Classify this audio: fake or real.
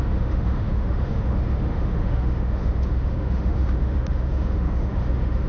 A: fake